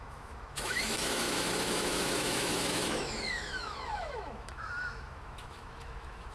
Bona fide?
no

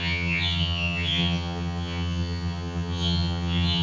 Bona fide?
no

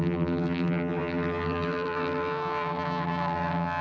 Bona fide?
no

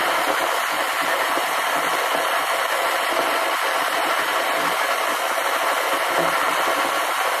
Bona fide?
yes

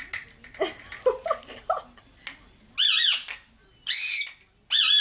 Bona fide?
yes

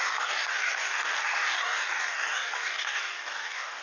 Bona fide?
no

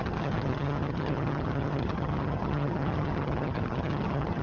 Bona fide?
no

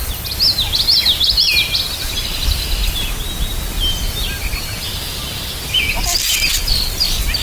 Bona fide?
yes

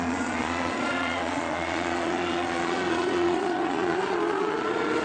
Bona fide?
no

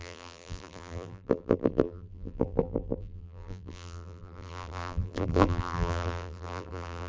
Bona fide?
no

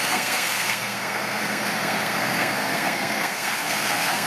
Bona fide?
no